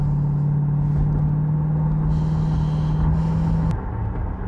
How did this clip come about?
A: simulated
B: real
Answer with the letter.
B